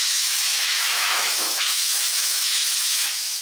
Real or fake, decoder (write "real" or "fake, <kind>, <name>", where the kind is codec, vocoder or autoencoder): fake, autoencoder, DAC-VAE